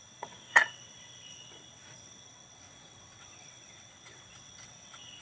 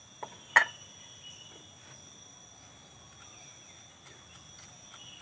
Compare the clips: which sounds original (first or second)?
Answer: second